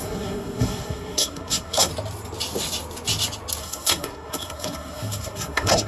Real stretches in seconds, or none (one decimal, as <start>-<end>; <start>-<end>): 1.9-3.6